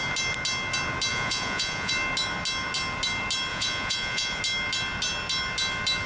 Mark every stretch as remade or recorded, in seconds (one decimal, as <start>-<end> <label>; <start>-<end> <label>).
0.0-1.1 recorded; 1.1-1.9 remade; 1.9-3.5 recorded; 3.5-4.4 remade; 4.4-6.1 recorded